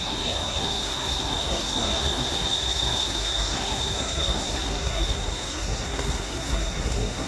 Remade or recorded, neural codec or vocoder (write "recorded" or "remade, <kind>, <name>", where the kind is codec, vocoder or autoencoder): remade, codec, SNAC